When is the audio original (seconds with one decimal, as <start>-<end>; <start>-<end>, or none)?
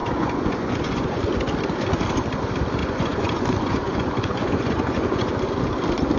1.2-2.8; 5.3-6.2